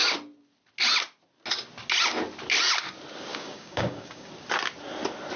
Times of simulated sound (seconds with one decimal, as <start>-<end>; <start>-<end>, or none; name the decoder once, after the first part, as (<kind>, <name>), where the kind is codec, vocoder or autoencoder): 3.3-4.3 (codec, DAC)